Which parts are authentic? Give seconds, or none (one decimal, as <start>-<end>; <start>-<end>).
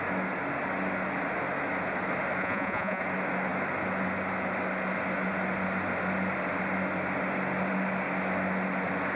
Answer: 0.0-2.4; 3.0-9.2